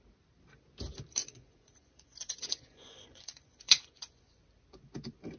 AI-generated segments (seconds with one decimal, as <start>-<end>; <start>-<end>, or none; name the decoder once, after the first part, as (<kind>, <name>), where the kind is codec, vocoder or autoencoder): 1.2-4.4 (vocoder, Vocos)